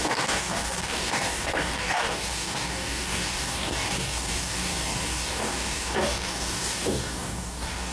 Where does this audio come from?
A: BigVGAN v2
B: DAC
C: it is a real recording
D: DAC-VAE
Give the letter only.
B